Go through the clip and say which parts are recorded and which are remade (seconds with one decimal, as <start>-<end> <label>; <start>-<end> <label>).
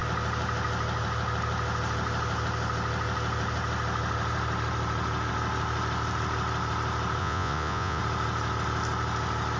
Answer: 0.0-7.2 recorded; 7.2-8.0 remade; 8.0-9.6 recorded